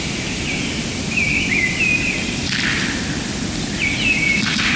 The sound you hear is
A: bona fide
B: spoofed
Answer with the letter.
A